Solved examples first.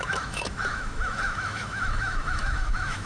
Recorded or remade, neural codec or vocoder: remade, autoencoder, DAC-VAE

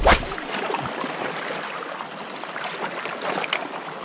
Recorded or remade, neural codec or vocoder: remade, vocoder, BigVGAN v2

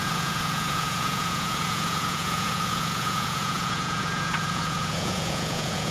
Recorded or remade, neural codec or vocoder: remade, vocoder, Vocos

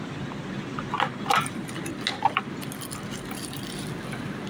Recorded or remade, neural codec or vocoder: recorded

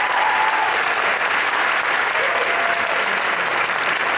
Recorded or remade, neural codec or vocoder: recorded